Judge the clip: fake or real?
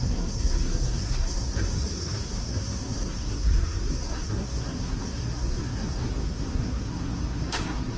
fake